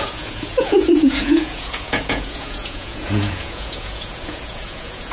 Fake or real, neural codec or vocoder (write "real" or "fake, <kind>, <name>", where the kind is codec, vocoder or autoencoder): fake, vocoder, Vocos